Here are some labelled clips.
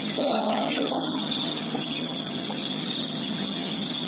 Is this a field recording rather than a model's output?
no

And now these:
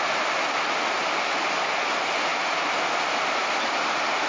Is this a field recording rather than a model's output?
yes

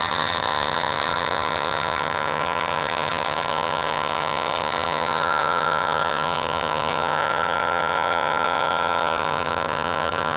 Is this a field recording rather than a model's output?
no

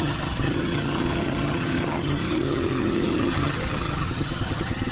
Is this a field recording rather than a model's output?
no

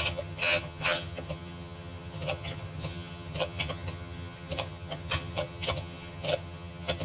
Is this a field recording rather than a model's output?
no